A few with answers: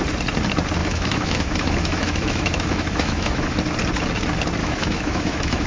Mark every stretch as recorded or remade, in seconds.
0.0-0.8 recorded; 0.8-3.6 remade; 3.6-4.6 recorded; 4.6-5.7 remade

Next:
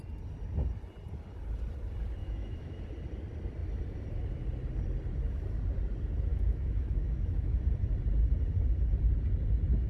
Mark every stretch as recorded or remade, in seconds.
0.0-2.2 recorded; 2.2-2.8 remade; 2.8-6.3 recorded; 6.3-7.6 remade; 7.6-9.9 recorded

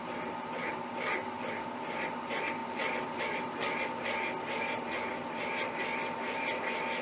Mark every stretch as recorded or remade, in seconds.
0.0-7.0 recorded